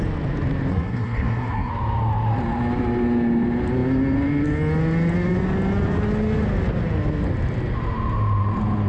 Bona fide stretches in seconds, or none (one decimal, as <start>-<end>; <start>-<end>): 0.0-0.7; 1.7-8.9